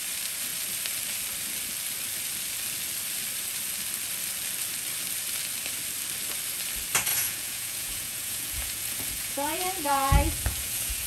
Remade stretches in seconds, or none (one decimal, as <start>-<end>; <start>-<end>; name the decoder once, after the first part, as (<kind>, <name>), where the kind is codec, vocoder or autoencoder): 7.1-11.1 (vocoder, Vocos)